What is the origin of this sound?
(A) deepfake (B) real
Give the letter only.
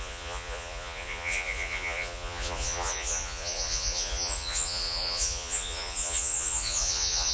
A